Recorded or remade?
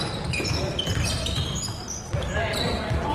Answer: recorded